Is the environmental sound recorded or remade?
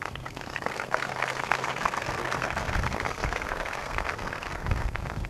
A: remade